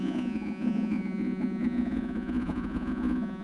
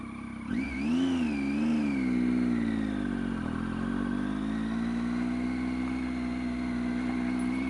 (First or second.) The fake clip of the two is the first